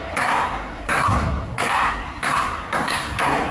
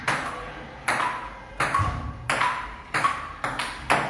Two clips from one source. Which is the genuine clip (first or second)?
second